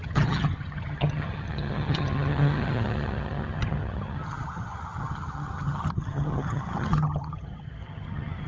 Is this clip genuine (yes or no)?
no